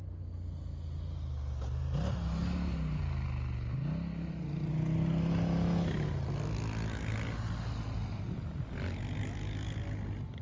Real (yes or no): yes